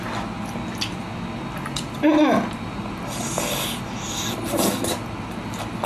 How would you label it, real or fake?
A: real